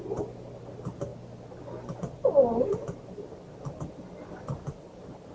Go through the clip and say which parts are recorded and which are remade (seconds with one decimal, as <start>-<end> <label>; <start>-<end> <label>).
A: 0.0-5.3 recorded